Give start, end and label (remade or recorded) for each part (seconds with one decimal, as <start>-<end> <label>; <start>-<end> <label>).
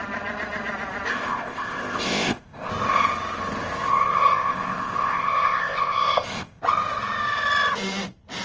0.0-1.1 recorded; 1.1-2.7 remade; 2.7-3.9 recorded; 3.9-6.6 remade; 6.6-8.4 recorded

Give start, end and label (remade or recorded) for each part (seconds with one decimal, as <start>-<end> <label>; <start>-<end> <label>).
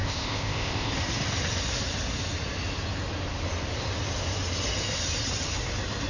0.0-0.9 remade; 0.9-6.1 recorded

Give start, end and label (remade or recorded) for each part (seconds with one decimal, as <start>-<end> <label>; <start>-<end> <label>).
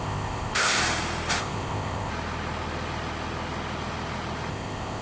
0.0-0.8 remade; 0.8-1.4 recorded; 1.4-2.1 remade; 2.1-4.5 recorded; 4.5-5.0 remade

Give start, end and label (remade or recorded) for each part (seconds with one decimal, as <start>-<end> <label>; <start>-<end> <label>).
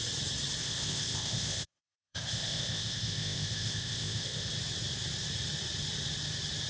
0.0-0.6 recorded; 0.6-4.5 remade; 4.5-6.7 recorded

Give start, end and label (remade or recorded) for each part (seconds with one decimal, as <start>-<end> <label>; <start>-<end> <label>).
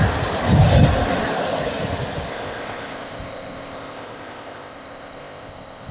0.0-2.3 recorded; 2.3-5.9 remade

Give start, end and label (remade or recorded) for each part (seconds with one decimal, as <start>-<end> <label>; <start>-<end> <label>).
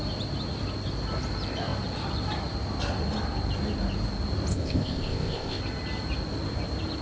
0.0-4.5 recorded; 4.5-5.6 remade; 5.6-7.0 recorded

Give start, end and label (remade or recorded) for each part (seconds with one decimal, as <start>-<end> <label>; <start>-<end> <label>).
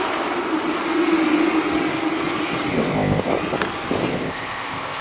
0.0-2.7 recorded; 2.7-3.3 remade; 3.3-4.1 recorded; 4.1-5.0 remade